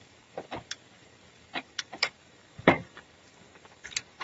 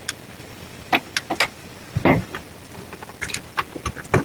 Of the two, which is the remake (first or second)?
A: first